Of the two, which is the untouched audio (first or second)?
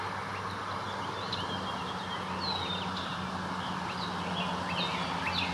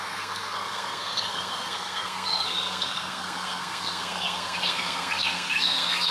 first